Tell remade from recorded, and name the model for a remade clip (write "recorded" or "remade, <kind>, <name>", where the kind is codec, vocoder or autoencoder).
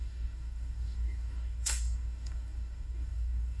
remade, codec, DAC